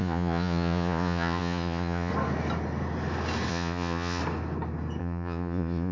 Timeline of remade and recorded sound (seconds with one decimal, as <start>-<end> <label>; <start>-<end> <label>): 0.0-2.1 remade; 2.1-3.5 recorded; 3.5-4.2 remade; 4.2-5.0 recorded; 5.0-5.9 remade